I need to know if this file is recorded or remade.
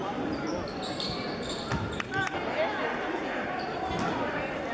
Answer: recorded